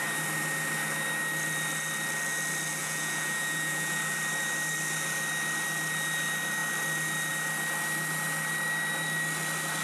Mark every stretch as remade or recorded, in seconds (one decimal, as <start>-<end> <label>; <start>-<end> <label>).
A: 0.0-2.8 recorded; 2.8-4.0 remade; 4.0-9.8 recorded